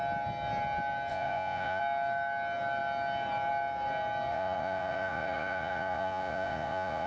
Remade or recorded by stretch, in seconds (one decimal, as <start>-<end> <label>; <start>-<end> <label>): 0.0-1.1 recorded; 1.1-1.8 remade; 1.8-4.3 recorded; 4.3-7.1 remade